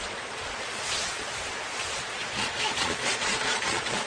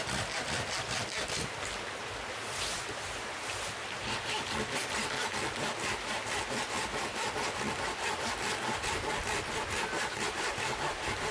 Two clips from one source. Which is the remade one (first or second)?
first